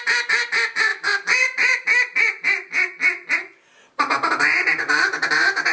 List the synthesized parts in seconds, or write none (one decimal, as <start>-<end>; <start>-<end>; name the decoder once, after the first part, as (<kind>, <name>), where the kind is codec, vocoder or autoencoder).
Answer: none